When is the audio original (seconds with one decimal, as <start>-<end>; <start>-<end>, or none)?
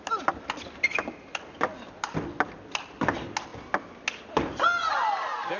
0.0-5.6